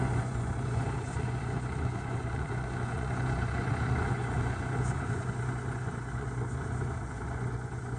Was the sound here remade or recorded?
remade